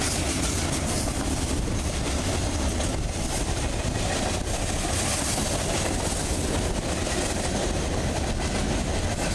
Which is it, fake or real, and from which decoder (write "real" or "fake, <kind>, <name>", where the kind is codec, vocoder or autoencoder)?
real